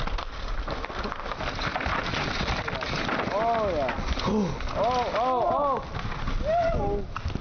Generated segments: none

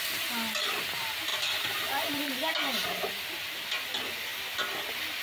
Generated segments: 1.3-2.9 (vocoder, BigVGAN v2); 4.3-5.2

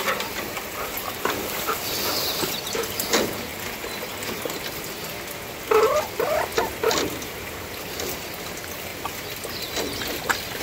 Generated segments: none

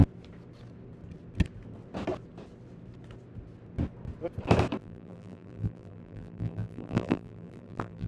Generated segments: 4.8-8.1 (vocoder, BigVGAN v2)

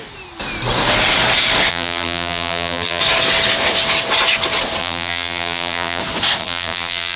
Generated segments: 1.7-3.0 (vocoder, BigVGAN v2); 4.8-6.0; 6.4-7.2

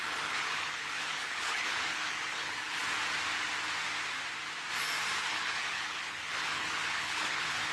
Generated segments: 0.0-2.8 (codec, HILCodec); 5.3-7.7

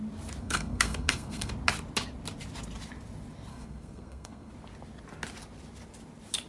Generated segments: 0.4-1.5 (codec, SNAC); 3.5-4.5